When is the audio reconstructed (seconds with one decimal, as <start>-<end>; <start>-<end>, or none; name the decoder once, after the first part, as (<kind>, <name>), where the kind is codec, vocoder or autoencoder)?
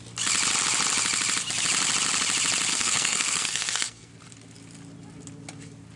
2.7-4.1 (codec, SNAC)